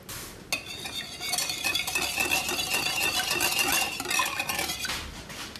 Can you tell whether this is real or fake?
real